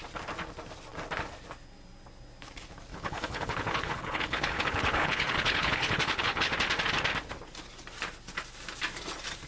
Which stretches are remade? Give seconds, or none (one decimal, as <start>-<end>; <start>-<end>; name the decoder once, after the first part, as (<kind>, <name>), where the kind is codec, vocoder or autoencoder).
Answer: 2.9-6.5 (codec, HILCodec)